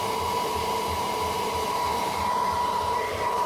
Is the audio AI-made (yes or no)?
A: yes